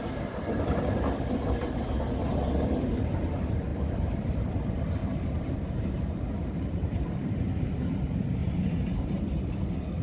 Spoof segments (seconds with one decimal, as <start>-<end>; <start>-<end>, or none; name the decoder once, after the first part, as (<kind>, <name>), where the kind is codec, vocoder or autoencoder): 3.7-4.2 (vocoder, BigVGAN v2); 5.0-7.4; 8.4-9.2